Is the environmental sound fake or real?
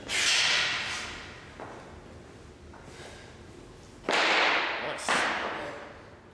real